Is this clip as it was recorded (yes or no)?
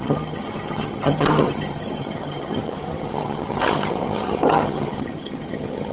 no